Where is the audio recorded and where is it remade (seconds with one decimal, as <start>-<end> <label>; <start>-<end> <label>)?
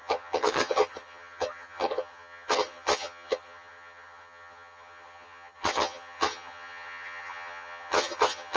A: 0.0-8.6 remade